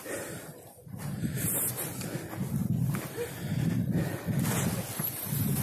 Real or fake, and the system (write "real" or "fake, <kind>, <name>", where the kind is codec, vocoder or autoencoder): real